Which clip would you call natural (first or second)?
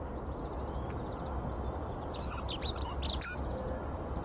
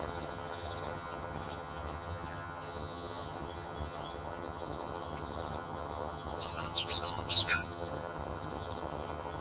first